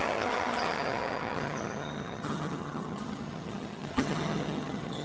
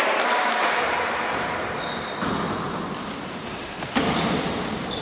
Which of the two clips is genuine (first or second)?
second